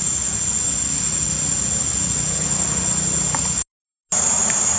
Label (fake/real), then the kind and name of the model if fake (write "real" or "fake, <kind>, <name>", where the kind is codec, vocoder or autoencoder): real